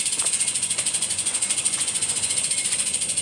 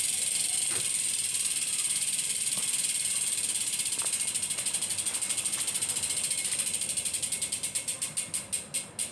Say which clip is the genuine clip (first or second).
second